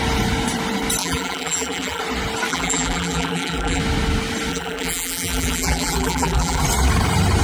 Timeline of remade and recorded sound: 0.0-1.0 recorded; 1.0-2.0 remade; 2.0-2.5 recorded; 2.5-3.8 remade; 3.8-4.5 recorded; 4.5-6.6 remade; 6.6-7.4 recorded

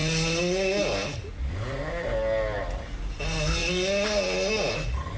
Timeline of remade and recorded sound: 0.0-5.2 recorded

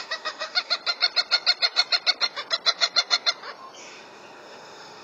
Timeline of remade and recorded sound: 0.0-0.8 remade; 0.8-3.8 recorded; 3.8-5.0 remade

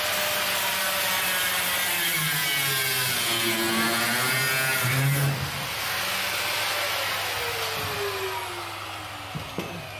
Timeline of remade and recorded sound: 0.0-10.0 recorded

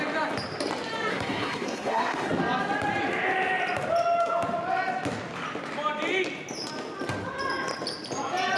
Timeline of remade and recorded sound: 0.0-1.1 recorded; 1.1-2.3 remade; 2.3-8.6 recorded

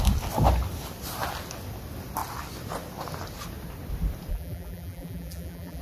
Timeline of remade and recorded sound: 0.0-4.3 recorded; 4.3-5.8 remade

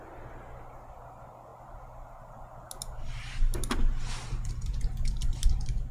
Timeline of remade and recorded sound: 0.0-5.9 recorded